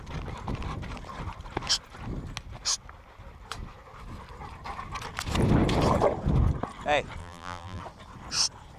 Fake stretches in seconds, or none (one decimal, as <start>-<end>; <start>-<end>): 7.2-7.8